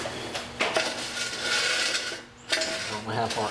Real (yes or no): yes